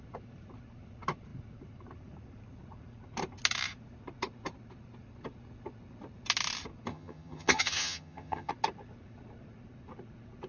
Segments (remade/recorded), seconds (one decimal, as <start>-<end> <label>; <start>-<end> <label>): 0.0-6.9 recorded; 6.9-8.5 remade; 8.5-10.5 recorded